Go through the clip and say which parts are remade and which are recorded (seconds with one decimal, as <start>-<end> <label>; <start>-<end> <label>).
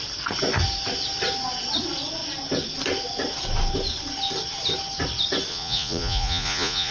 0.0-5.5 recorded; 5.5-6.9 remade